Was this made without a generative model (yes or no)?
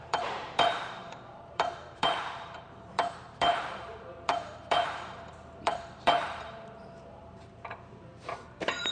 no